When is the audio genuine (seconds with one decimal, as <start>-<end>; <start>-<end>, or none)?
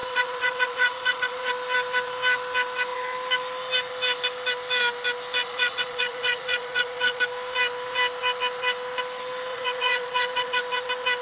1.5-5.4; 7.2-9.5; 10.6-11.2